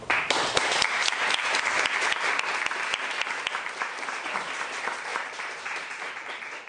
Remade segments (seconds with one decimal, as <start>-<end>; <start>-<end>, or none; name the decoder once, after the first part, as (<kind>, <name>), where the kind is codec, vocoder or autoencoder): 5.1-5.9 (vocoder, BigVGAN v2)